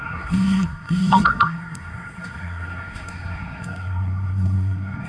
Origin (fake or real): fake